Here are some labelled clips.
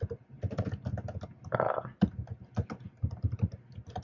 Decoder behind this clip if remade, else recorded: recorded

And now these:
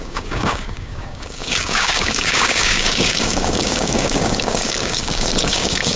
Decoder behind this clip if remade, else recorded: remade, codec, DAC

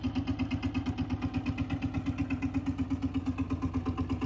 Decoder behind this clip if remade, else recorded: recorded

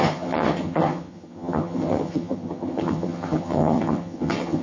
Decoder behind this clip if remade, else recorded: remade, vocoder, HiFi-GAN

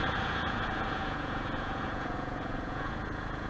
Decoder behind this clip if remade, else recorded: remade, vocoder, Vocos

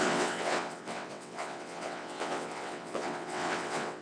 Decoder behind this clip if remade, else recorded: remade, vocoder, WaveNeXt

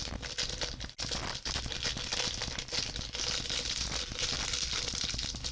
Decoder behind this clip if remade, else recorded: recorded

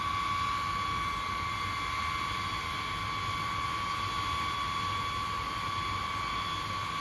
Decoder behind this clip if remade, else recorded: recorded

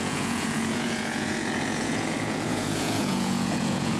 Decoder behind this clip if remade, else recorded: remade, vocoder, Vocos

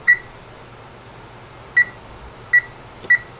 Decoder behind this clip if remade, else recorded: recorded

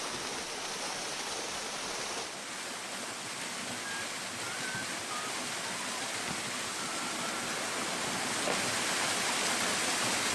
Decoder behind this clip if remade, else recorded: recorded